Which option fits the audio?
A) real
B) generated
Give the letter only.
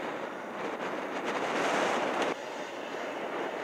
B